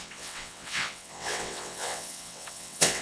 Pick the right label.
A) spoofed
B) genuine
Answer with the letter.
A